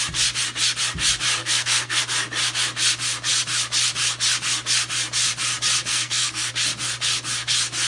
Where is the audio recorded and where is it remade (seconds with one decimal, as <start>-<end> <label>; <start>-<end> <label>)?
0.0-1.4 recorded; 1.4-2.0 remade; 2.0-5.9 recorded; 5.9-6.5 remade; 6.5-7.9 recorded